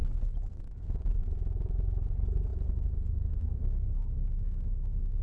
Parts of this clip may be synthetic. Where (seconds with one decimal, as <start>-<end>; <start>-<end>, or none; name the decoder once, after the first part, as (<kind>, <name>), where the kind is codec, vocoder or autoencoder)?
none

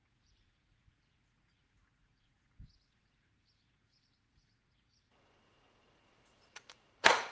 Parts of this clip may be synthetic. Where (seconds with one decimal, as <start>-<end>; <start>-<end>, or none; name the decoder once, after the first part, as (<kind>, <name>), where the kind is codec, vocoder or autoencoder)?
0.0-7.3 (vocoder, Vocos)